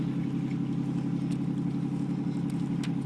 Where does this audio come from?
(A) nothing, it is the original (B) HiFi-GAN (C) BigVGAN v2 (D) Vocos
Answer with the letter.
A